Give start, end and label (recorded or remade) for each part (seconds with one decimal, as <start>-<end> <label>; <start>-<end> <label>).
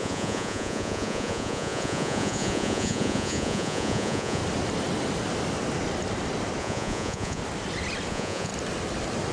0.0-4.4 remade; 4.4-6.6 recorded; 6.6-7.4 remade; 7.4-8.1 recorded; 8.1-8.5 remade; 8.5-9.3 recorded